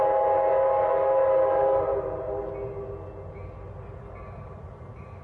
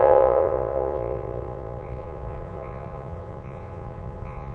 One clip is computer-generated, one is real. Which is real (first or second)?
first